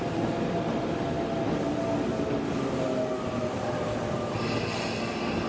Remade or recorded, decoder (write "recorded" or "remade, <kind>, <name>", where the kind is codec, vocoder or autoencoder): recorded